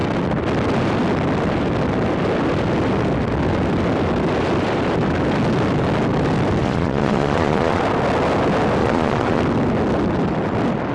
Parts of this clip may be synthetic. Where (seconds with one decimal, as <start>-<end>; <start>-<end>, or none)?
6.6-7.8; 8.8-9.4